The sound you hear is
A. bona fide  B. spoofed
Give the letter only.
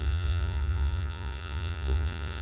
B